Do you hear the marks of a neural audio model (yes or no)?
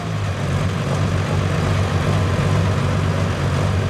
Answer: no